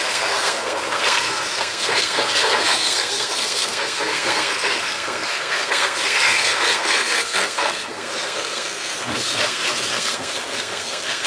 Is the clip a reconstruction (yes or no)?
yes